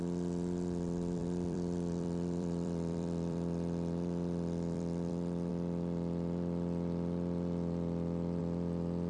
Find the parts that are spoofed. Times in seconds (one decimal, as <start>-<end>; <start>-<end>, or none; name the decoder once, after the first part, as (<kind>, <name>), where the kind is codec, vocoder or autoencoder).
1.2-5.1 (vocoder, BigVGAN v2)